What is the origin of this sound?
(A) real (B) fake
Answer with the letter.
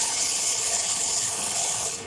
B